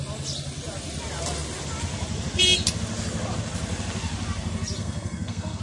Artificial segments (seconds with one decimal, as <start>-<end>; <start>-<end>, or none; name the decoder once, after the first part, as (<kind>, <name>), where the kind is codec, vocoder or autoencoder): 4.8-5.6 (codec, SNAC)